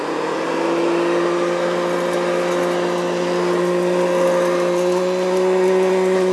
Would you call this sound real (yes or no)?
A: yes